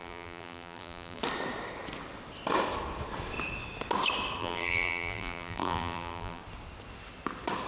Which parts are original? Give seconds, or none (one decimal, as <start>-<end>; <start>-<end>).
1.2-4.4; 6.4-7.7